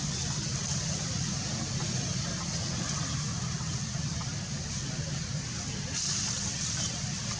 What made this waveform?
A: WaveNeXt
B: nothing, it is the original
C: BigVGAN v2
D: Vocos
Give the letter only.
B